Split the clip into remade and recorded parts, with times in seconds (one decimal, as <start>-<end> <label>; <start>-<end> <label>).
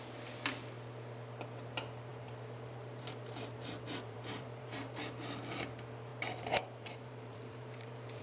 0.0-2.1 recorded; 2.1-5.0 remade; 5.0-6.1 recorded; 6.1-8.2 remade